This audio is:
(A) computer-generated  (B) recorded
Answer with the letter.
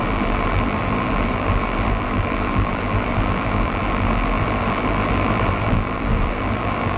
A